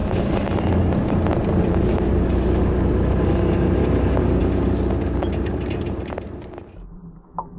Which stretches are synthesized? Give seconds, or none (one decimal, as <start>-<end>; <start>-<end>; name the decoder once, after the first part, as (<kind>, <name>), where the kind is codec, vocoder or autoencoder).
none